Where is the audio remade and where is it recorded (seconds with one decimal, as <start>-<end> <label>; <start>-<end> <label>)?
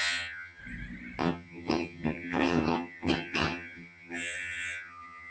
0.0-0.6 remade; 0.6-1.2 recorded; 1.2-5.3 remade